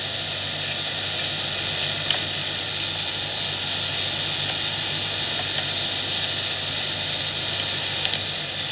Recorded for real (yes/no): yes